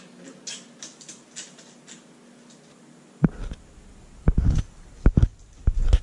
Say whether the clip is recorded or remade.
recorded